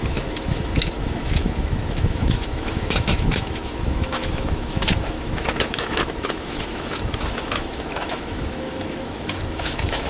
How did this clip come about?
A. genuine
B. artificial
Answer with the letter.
B